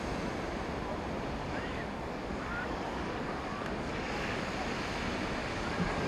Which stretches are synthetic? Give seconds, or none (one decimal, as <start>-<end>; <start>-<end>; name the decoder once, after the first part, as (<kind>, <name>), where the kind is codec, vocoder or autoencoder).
1.4-4.4 (codec, DAC); 5.4-6.1